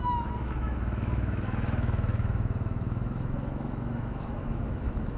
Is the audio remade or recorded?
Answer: remade